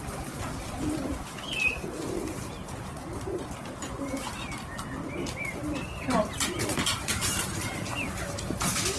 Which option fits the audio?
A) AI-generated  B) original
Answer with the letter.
B